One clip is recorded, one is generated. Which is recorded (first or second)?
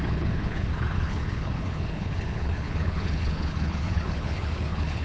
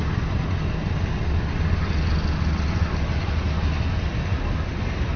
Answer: second